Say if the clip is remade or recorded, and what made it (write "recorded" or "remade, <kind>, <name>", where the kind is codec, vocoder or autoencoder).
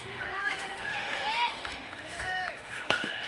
remade, autoencoder, DAC-VAE